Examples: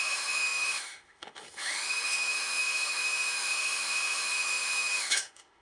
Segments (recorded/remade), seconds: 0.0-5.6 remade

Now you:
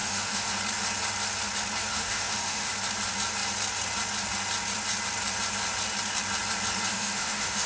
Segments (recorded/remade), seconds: 0.0-0.5 remade; 0.5-1.9 recorded; 1.9-2.7 remade; 2.7-6.9 recorded; 6.9-7.7 remade

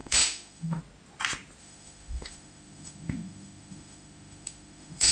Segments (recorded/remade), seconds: 0.0-0.8 remade; 0.8-1.6 recorded; 1.6-5.1 remade

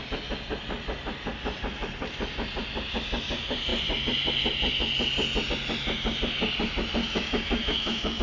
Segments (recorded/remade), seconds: 0.0-7.0 recorded; 7.0-8.2 remade

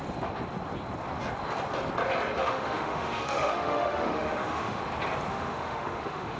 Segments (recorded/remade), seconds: 0.0-2.4 recorded; 2.4-4.8 remade; 4.8-5.3 recorded; 5.3-6.4 remade

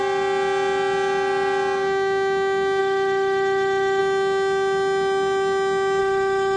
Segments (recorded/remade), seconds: 0.0-2.8 recorded; 2.8-4.0 remade; 4.0-6.0 recorded; 6.0-6.6 remade

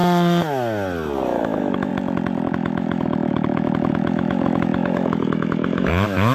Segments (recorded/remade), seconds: 0.0-1.4 recorded; 1.4-1.9 remade; 1.9-2.5 recorded; 2.5-6.3 remade